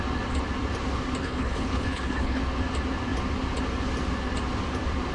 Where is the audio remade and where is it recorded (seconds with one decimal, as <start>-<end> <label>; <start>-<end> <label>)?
0.0-1.2 recorded; 1.2-2.4 remade; 2.4-5.1 recorded

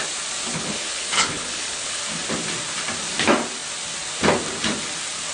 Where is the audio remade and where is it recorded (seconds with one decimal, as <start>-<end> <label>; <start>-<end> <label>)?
0.0-0.5 recorded; 0.5-2.0 remade; 2.0-5.3 recorded

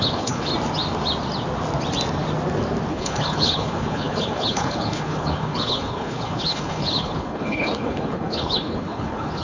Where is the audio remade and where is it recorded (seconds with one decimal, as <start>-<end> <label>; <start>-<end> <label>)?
0.0-0.5 remade; 0.5-2.9 recorded; 2.9-9.4 remade

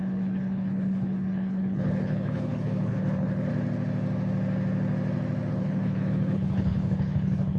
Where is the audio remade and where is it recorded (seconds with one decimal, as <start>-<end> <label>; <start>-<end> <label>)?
0.0-3.5 remade; 3.5-5.5 recorded; 5.5-7.6 remade

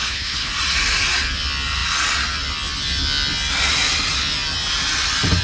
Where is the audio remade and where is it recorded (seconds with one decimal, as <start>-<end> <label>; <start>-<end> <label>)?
0.0-0.5 remade; 0.5-5.4 recorded

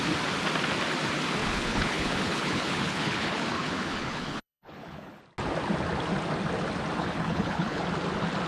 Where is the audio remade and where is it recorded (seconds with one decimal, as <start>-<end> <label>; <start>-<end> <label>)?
0.0-1.4 recorded; 1.4-5.2 remade; 5.2-7.0 recorded; 7.0-7.8 remade; 7.8-8.5 recorded

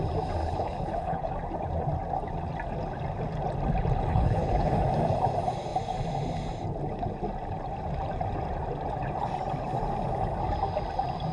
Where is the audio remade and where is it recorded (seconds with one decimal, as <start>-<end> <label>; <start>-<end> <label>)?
0.0-0.4 recorded; 0.4-1.3 remade; 1.3-4.1 recorded; 4.1-4.8 remade; 4.8-11.3 recorded